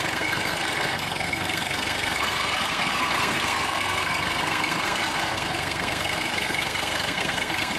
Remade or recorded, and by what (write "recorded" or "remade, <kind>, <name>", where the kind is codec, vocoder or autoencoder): remade, codec, SNAC